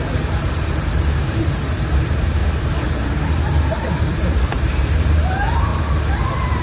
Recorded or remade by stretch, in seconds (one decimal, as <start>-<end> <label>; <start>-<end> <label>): 0.0-2.4 remade; 2.4-4.0 recorded; 4.0-5.7 remade; 5.7-6.6 recorded